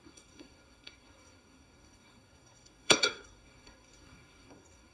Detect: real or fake fake